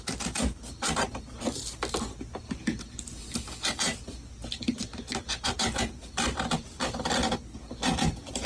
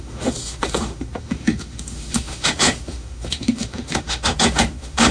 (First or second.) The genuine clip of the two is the first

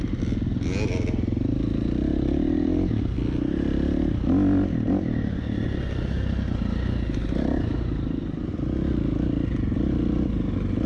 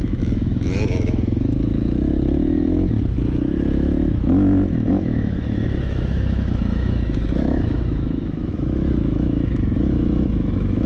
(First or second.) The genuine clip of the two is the first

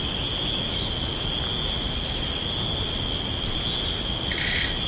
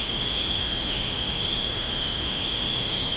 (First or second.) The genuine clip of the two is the first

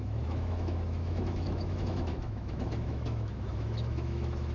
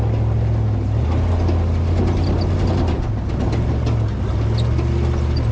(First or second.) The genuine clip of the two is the second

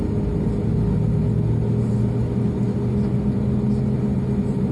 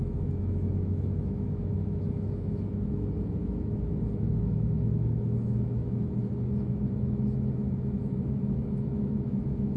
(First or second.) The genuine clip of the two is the first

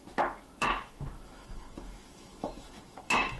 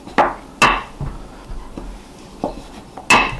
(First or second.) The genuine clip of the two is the second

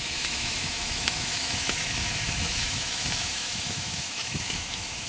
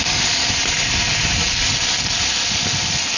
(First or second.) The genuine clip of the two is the second